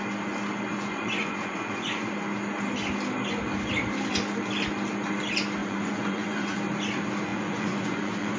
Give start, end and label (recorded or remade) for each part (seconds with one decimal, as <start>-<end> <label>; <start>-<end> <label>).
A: 0.0-0.7 recorded; 0.7-2.1 remade; 2.1-5.6 recorded; 5.6-6.6 remade; 6.6-7.3 recorded; 7.3-8.4 remade